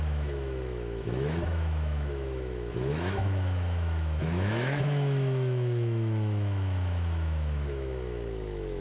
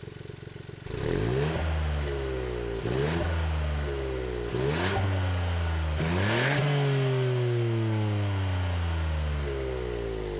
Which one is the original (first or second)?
second